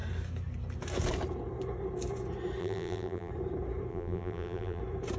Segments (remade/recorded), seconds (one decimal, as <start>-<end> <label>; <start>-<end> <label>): 0.0-2.6 recorded; 2.6-3.3 remade; 3.3-3.9 recorded; 3.9-4.8 remade; 4.8-5.2 recorded